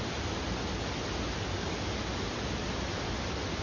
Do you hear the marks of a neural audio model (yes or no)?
no